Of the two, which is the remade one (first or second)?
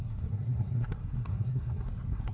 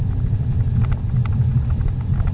first